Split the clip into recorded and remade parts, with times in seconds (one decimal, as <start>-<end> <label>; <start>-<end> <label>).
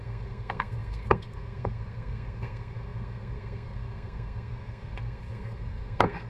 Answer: 0.0-6.3 remade